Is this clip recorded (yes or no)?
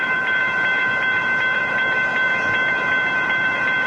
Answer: no